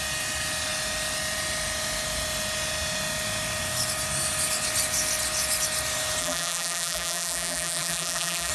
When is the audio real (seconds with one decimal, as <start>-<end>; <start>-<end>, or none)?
0.0-6.2